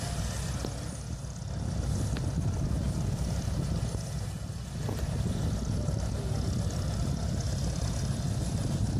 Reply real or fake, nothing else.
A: real